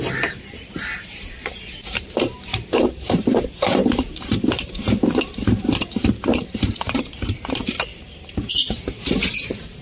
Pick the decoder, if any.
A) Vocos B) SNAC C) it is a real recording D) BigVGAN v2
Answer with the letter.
D